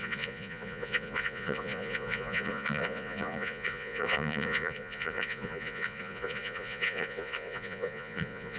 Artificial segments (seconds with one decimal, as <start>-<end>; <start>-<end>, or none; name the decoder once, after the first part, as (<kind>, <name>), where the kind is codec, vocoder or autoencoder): 0.0-8.6 (vocoder, Vocos)

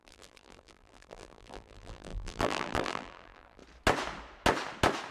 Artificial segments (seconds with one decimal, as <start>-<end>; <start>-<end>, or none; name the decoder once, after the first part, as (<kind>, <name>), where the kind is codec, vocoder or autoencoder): 0.0-3.6 (vocoder, BigVGAN v2)

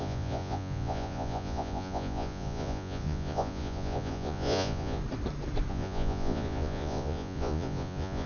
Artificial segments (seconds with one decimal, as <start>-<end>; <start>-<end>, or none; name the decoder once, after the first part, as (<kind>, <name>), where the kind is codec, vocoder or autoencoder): 0.0-5.0 (vocoder, Vocos); 5.7-8.3